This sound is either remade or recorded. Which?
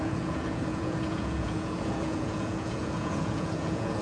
remade